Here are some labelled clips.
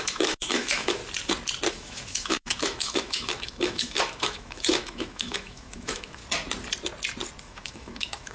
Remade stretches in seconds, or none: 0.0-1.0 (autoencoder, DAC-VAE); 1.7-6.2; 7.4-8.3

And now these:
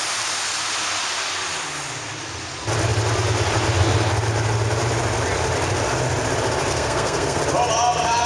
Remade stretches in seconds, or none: 6.7-7.4 (codec, SNAC)

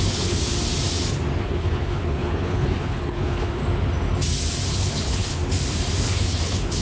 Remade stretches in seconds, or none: 0.0-0.4 (codec, HILCodec); 1.4-3.6; 4.7-5.4; 6.0-6.8